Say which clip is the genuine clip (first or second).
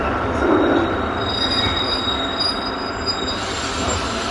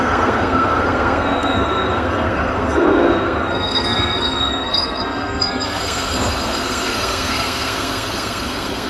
first